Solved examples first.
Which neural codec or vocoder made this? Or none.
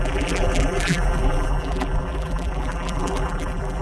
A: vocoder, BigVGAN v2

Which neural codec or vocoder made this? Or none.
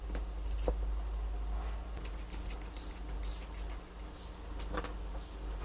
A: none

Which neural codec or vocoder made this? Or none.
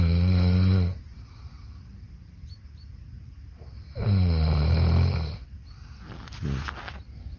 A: none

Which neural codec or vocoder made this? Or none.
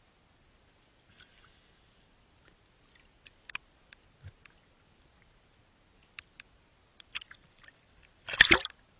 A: none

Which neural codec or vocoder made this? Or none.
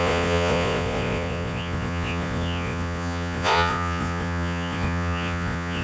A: vocoder, Vocos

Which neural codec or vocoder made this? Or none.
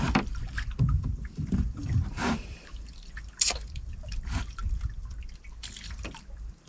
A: vocoder, BigVGAN v2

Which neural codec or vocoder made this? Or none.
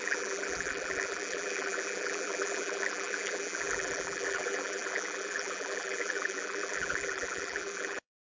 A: vocoder, BigVGAN v2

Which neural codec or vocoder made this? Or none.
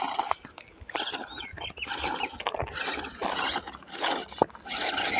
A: none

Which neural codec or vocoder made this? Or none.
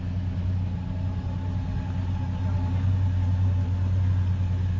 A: none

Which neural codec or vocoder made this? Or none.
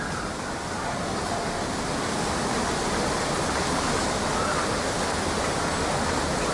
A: none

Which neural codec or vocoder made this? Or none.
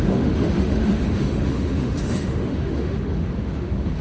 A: autoencoder, DAC-VAE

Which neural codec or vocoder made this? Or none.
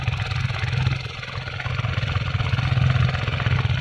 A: none